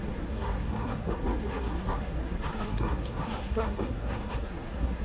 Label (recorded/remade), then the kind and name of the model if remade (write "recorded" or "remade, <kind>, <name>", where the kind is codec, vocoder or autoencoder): remade, codec, SNAC